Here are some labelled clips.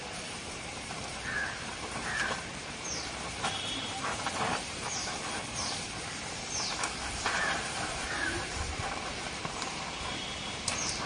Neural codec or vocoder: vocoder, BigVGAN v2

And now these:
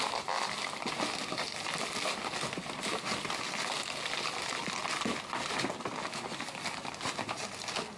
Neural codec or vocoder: none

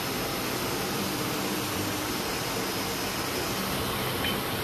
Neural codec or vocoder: none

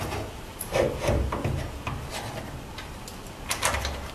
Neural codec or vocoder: none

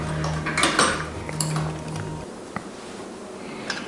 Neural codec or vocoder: none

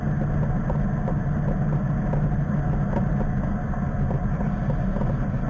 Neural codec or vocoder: none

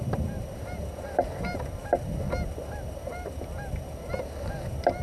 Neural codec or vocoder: none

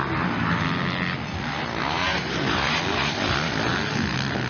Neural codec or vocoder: none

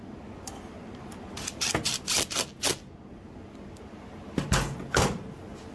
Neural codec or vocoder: none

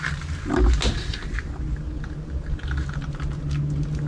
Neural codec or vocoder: none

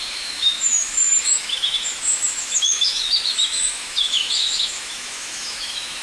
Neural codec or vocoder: autoencoder, DAC-VAE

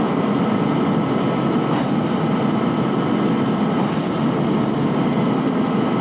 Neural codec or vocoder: none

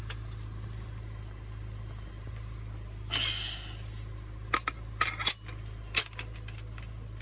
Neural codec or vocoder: none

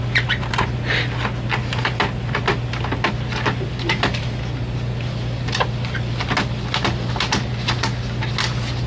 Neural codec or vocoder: none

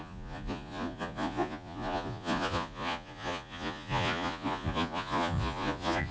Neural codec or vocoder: vocoder, Vocos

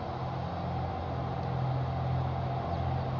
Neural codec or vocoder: none